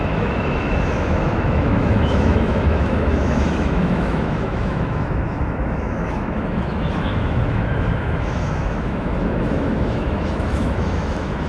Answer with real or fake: fake